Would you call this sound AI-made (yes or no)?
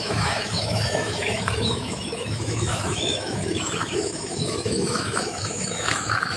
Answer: yes